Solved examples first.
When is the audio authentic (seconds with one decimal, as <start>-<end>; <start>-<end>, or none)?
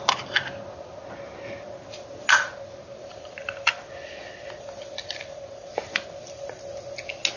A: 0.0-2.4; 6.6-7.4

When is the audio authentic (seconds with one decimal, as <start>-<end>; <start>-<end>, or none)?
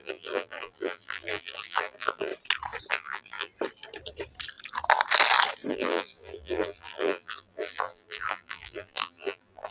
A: 2.3-2.9; 3.5-5.7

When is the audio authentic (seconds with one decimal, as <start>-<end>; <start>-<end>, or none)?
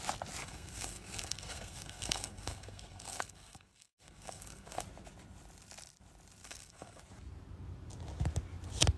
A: 0.0-0.4; 4.8-6.4; 7.0-9.0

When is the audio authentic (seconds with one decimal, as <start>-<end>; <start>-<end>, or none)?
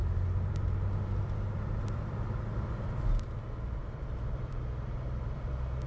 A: 2.9-3.8; 5.5-5.9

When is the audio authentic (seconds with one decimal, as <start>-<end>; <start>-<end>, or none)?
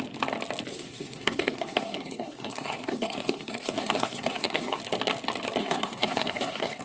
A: 0.0-0.7; 4.8-5.6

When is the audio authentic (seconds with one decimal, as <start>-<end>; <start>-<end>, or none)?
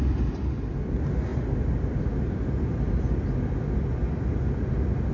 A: 0.0-5.1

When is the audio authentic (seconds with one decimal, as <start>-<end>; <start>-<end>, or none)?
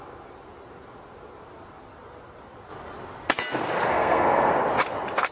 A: 0.0-3.9; 4.5-5.3